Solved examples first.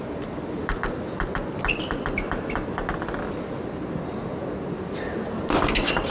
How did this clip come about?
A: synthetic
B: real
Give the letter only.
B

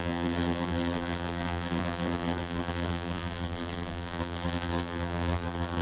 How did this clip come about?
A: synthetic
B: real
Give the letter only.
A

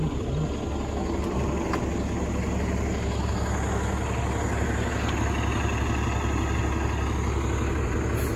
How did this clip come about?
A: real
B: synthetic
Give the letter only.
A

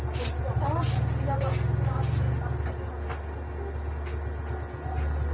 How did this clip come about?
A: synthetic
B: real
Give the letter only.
B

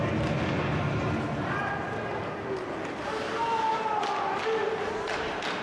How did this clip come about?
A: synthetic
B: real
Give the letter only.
B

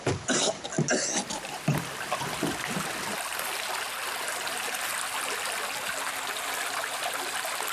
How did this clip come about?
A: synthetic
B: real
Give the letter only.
B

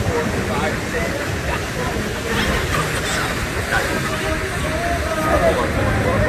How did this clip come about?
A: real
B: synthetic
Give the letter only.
A